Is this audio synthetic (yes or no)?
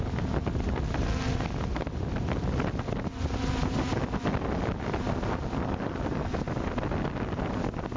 no